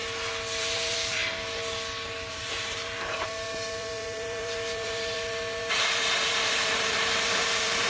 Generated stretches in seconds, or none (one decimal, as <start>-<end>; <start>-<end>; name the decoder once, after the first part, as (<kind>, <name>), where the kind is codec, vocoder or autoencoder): 0.6-1.2 (vocoder, BigVGAN v2); 2.3-7.9